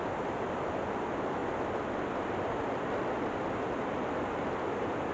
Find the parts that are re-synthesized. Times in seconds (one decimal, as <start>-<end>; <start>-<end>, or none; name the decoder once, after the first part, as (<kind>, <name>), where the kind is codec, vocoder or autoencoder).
none